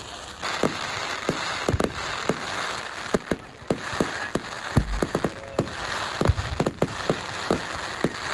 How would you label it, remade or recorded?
recorded